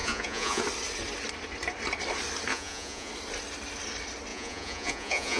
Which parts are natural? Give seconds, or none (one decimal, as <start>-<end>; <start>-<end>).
0.6-2.5; 3.1-4.3